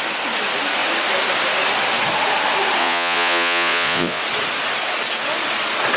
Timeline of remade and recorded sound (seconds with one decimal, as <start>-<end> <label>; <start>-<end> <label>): 0.0-2.8 recorded; 2.8-4.2 remade; 4.2-6.0 recorded